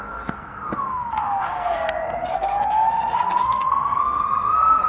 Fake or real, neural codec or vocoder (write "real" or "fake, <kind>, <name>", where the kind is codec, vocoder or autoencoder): fake, codec, SNAC